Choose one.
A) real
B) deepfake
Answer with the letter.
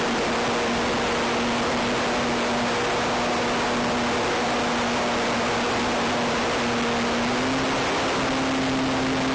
A